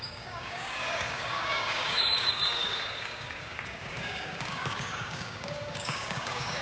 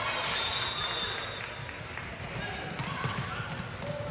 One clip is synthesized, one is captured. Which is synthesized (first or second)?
first